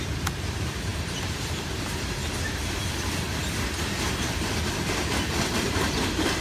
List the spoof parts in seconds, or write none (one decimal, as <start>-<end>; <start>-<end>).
0.0-2.2; 5.6-6.4